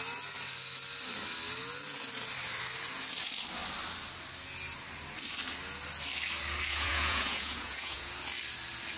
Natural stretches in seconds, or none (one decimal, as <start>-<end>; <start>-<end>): 0.0-6.7; 8.1-9.0